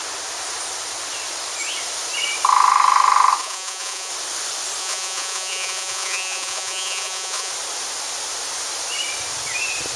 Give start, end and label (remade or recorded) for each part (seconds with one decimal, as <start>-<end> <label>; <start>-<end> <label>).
0.0-3.4 recorded; 3.4-4.1 remade; 4.1-4.8 recorded; 4.8-7.5 remade; 7.5-10.0 recorded